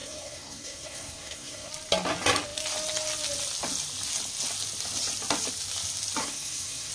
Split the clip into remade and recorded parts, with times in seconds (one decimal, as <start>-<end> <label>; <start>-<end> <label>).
0.0-1.7 remade; 1.7-6.2 recorded; 6.2-6.9 remade